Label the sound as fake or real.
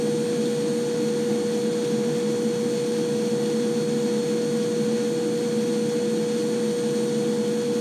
real